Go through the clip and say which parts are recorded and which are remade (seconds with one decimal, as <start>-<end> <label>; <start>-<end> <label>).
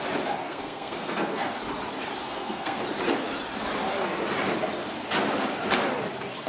0.0-0.4 recorded; 0.4-1.6 remade; 1.6-2.2 recorded; 2.2-2.8 remade; 2.8-6.5 recorded